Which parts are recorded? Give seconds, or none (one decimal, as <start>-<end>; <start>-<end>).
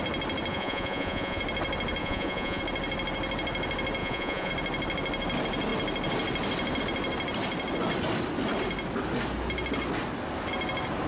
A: 0.0-0.5; 1.4-2.0; 2.6-4.0; 4.5-11.1